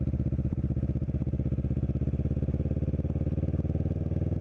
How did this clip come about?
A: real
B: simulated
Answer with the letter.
A